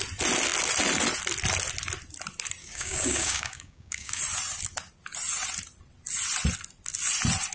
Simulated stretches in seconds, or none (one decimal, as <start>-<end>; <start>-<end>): 2.6-4.2